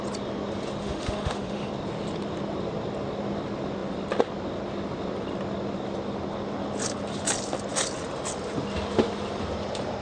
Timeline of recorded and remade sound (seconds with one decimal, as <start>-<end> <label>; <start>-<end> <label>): 0.0-0.8 recorded; 0.8-1.7 remade; 1.7-10.0 recorded